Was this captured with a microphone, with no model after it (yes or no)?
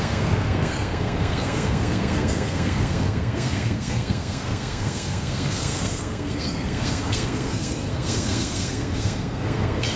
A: no